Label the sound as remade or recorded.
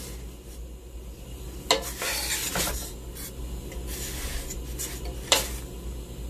recorded